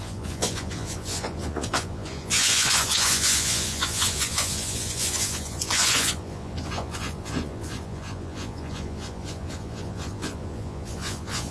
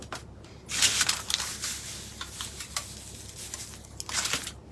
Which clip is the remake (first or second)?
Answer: first